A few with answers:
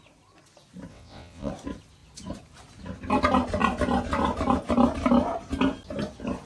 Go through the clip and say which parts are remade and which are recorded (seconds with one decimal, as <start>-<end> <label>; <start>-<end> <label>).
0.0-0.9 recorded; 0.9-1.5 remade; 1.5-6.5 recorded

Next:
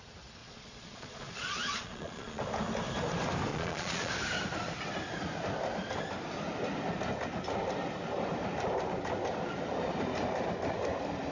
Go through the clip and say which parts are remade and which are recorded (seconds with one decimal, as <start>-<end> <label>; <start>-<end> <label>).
0.0-0.4 recorded; 0.4-2.4 remade; 2.4-3.5 recorded; 3.5-4.1 remade; 4.1-11.3 recorded

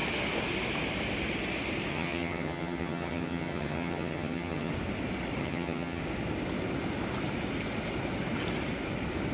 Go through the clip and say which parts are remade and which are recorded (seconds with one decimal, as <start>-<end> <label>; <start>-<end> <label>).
0.0-1.9 recorded; 1.9-4.7 remade; 4.7-5.4 recorded; 5.4-6.0 remade; 6.0-9.3 recorded

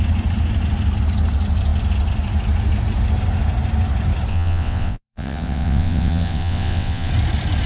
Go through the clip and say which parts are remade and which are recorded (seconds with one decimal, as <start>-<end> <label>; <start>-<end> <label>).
0.0-4.3 recorded; 4.3-7.1 remade; 7.1-7.7 recorded

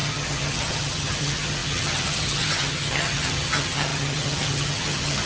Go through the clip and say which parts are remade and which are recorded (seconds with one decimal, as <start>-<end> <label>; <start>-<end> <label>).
0.0-5.3 remade

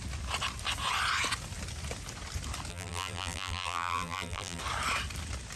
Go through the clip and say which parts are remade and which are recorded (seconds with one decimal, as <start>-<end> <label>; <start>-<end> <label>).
0.0-2.7 recorded; 2.7-4.6 remade; 4.6-5.6 recorded